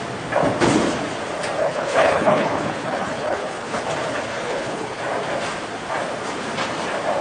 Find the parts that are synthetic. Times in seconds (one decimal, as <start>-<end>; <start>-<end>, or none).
1.6-3.8; 4.3-5.0